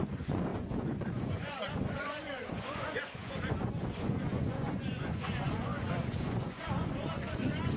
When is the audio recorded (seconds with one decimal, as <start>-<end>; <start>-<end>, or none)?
none